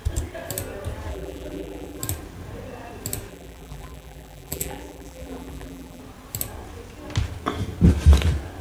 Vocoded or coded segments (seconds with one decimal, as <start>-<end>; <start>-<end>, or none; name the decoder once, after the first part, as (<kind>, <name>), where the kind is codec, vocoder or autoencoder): 1.1-2.0 (vocoder, BigVGAN v2); 3.3-6.0